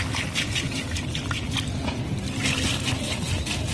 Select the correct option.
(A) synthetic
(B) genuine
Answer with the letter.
B